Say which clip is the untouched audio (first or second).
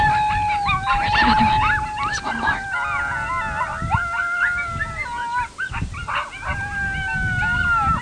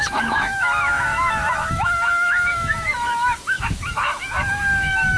first